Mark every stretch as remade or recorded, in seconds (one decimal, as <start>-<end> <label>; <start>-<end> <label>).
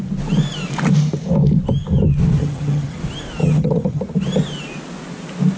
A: 0.0-2.4 recorded; 2.4-3.0 remade; 3.0-3.4 recorded; 3.4-4.0 remade; 4.0-5.6 recorded